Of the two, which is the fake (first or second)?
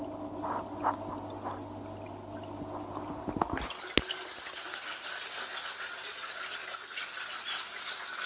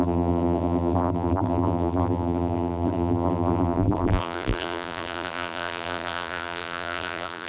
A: second